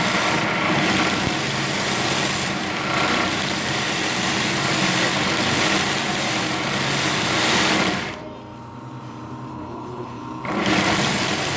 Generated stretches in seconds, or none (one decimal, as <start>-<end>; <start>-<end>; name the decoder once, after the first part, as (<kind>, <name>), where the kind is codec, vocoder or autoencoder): 9.5-10.2 (codec, HILCodec)